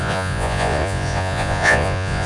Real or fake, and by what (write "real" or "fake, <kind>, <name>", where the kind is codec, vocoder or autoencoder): fake, vocoder, Vocos